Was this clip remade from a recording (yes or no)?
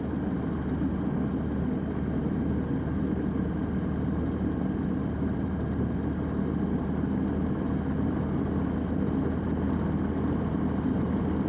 no